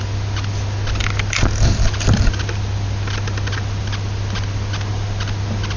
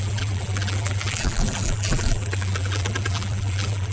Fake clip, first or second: second